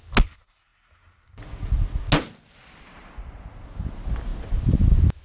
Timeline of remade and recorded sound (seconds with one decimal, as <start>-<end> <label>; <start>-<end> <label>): 0.0-5.2 recorded